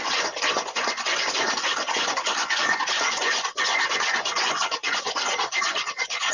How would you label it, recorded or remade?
remade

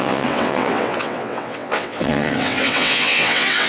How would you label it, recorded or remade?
remade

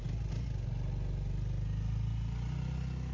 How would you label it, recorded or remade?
recorded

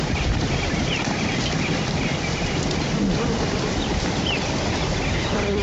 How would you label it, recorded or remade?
recorded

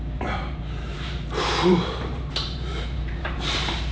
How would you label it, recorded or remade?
remade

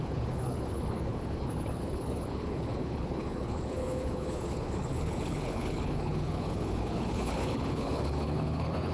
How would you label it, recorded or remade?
remade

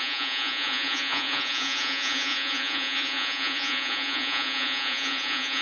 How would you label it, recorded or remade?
remade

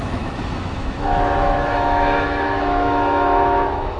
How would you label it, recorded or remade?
remade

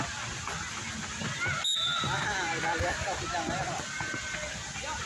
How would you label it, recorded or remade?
recorded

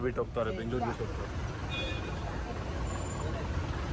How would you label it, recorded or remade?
recorded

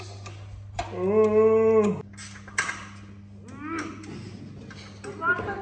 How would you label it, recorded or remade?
recorded